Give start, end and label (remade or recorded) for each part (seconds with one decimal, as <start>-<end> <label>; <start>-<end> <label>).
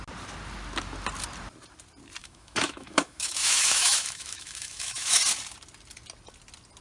0.0-2.2 recorded; 2.2-5.2 remade; 5.2-6.8 recorded